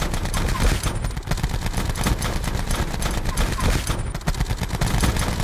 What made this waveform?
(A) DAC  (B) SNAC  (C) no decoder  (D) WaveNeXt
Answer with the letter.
C